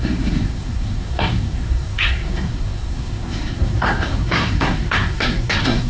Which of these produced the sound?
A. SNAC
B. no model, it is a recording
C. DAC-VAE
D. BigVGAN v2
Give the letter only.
A